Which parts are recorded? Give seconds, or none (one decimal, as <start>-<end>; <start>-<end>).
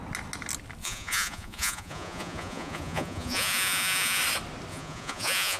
0.0-0.8; 4.2-4.7